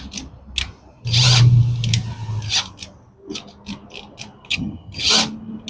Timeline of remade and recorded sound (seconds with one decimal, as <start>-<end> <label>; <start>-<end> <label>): 0.0-4.5 recorded; 4.5-5.1 remade; 5.1-5.7 recorded